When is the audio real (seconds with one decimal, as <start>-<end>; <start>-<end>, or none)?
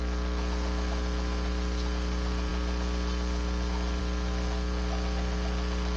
0.0-6.0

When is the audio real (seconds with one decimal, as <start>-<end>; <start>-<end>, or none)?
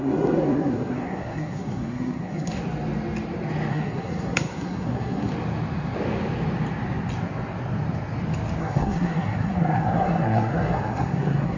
2.6-3.7; 5.3-8.6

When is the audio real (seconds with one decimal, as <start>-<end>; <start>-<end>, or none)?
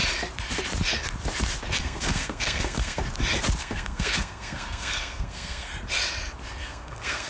0.0-1.8; 3.0-3.6; 5.7-6.6